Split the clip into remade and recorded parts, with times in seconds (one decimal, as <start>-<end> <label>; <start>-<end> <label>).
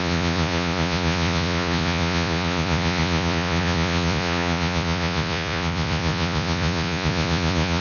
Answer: 0.0-7.8 remade